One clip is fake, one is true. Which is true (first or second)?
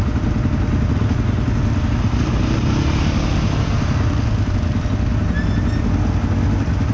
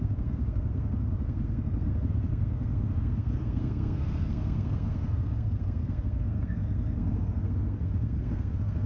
first